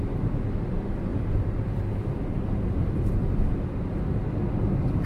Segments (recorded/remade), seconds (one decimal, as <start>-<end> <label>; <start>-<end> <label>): 0.0-5.1 recorded

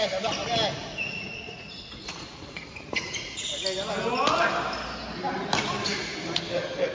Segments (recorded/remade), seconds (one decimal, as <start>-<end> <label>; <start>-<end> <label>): 0.0-0.8 recorded; 0.8-3.5 remade; 3.5-6.9 recorded